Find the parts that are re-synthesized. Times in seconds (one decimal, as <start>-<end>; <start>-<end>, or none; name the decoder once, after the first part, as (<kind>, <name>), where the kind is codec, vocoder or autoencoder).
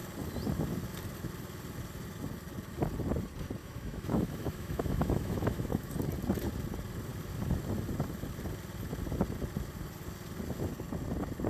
3.6-5.9 (autoencoder, DAC-VAE)